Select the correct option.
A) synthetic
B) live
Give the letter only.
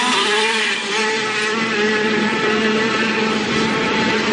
A